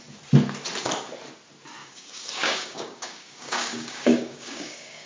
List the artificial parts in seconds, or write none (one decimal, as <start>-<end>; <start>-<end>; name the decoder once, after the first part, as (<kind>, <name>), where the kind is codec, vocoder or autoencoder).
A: 1.8-5.1 (codec, DAC)